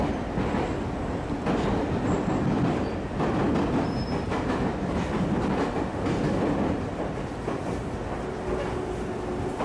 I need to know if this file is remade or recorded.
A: recorded